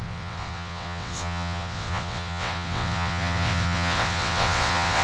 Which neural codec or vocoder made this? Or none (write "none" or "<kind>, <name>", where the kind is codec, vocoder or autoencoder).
vocoder, WaveNeXt